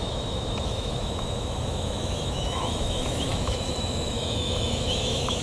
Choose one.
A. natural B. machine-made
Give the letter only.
B